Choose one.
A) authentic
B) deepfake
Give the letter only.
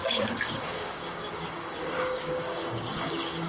B